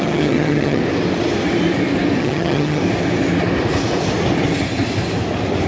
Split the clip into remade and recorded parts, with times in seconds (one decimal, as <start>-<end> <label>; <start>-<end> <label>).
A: 0.0-0.8 remade; 0.8-2.2 recorded; 2.2-2.8 remade; 2.8-5.7 recorded